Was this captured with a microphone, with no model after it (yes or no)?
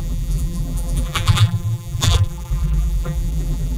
no